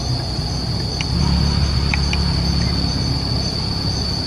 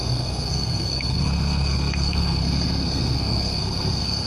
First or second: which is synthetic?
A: second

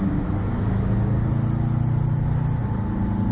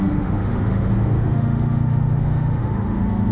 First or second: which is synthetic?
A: second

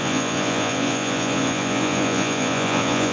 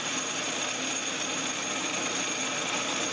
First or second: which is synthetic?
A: first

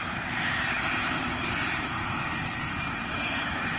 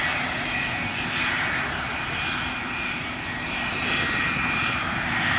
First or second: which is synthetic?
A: first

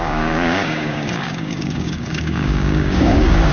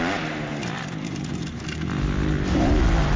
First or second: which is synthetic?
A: first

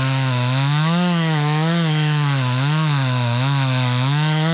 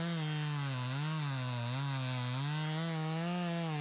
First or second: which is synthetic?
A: first